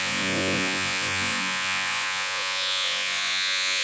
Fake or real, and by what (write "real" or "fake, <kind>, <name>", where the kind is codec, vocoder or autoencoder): fake, vocoder, Vocos